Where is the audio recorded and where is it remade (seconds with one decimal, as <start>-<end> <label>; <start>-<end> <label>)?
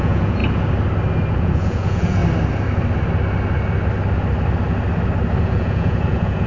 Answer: 0.0-0.4 remade; 0.4-1.3 recorded; 1.3-2.2 remade; 2.2-5.4 recorded; 5.4-6.5 remade